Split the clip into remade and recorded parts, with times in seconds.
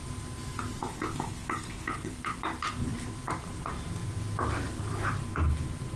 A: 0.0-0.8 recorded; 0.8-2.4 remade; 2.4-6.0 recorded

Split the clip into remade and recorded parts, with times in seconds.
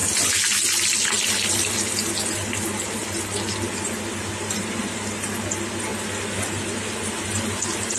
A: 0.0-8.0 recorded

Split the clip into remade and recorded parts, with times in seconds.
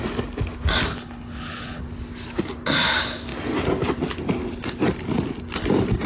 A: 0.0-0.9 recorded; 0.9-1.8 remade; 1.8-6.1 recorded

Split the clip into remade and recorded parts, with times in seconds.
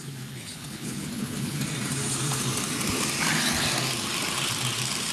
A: 0.0-1.6 remade; 1.6-5.1 recorded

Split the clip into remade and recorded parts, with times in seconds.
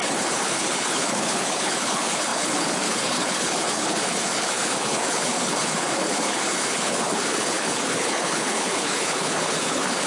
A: 0.0-10.1 remade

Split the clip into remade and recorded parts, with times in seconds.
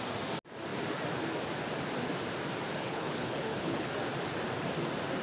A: 0.0-2.7 recorded; 2.7-3.9 remade; 3.9-5.2 recorded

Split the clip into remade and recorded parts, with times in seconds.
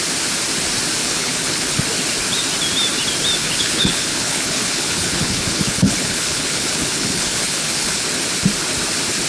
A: 0.0-1.0 recorded; 1.0-1.8 remade; 1.8-3.4 recorded; 3.4-8.0 remade; 8.0-9.3 recorded